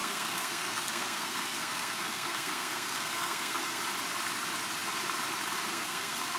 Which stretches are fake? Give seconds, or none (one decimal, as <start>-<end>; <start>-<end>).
0.0-3.8; 5.7-6.4